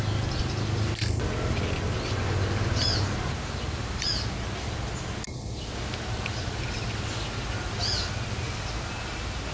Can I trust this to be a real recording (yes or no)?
yes